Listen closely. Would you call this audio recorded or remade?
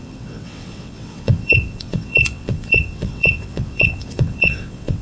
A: remade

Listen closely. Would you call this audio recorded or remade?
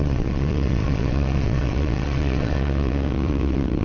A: remade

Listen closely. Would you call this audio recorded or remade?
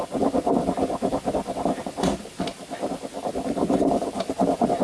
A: recorded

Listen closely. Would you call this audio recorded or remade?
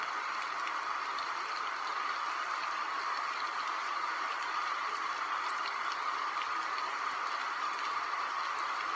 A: recorded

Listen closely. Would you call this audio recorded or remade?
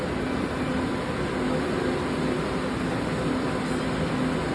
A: recorded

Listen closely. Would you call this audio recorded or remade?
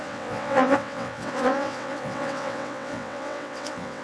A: remade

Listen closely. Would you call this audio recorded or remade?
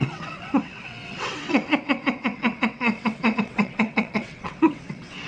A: remade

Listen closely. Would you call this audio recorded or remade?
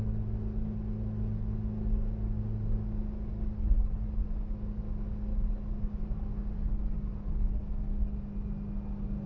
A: recorded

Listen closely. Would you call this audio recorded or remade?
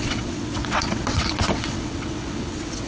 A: remade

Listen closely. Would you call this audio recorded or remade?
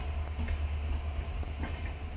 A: recorded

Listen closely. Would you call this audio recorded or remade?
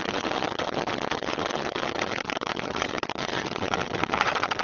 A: remade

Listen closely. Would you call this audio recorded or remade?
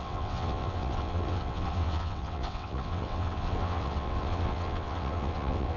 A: remade